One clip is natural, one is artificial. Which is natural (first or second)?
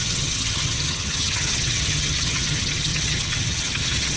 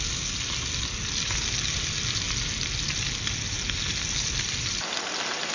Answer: second